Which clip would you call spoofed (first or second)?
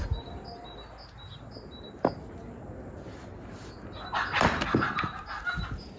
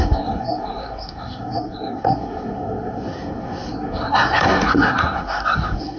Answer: second